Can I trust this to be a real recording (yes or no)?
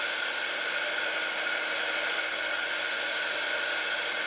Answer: yes